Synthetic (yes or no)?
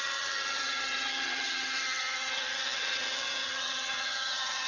yes